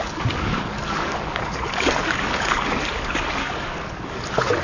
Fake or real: fake